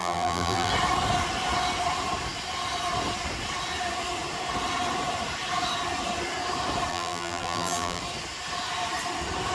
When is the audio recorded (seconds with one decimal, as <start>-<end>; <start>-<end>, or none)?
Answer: 0.7-6.9; 8.0-9.5